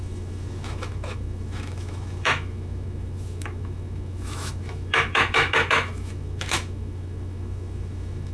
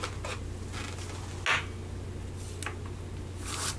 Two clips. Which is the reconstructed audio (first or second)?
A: first